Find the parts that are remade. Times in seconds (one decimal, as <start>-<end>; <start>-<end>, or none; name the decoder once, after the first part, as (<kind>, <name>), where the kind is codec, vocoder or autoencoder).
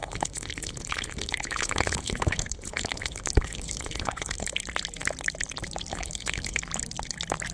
0.0-4.5 (codec, HILCodec); 5.9-6.6